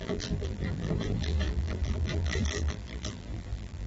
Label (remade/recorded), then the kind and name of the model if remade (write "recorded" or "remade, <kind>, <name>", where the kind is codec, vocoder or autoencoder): remade, vocoder, BigVGAN v2